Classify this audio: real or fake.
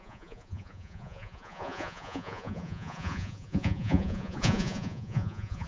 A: fake